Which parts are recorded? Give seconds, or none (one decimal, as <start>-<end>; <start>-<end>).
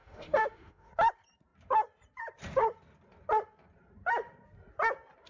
0.9-5.3